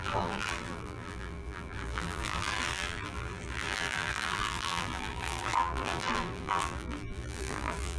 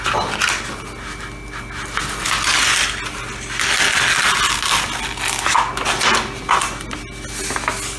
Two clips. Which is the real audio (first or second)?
second